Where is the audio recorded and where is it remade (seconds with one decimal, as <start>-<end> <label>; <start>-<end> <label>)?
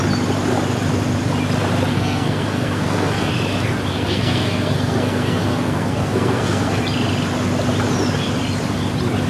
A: 0.0-1.9 recorded; 1.9-3.3 remade; 3.3-3.9 recorded; 3.9-6.8 remade; 6.8-9.3 recorded